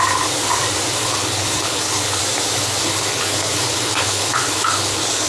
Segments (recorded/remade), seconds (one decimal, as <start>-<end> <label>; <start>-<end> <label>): 0.0-1.0 recorded; 1.0-2.2 remade; 2.2-2.8 recorded; 2.8-5.3 remade